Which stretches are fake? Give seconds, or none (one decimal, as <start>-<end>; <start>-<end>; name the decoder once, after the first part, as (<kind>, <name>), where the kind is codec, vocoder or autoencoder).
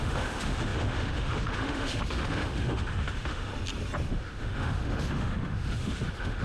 0.0-3.5 (autoencoder, DAC-VAE); 4.1-6.4